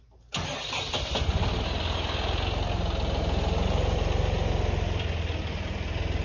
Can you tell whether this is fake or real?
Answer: real